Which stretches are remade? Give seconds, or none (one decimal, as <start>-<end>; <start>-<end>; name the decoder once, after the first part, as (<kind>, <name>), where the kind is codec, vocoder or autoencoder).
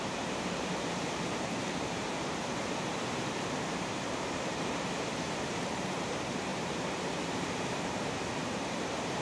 0.0-9.2 (vocoder, BigVGAN v2)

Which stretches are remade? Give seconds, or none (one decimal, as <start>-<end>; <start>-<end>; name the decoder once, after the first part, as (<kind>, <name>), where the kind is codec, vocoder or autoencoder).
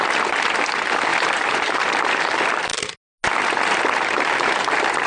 1.1-2.0 (vocoder, BigVGAN v2)